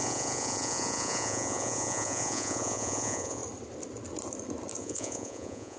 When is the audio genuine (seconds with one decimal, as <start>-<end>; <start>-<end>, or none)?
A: 3.4-4.8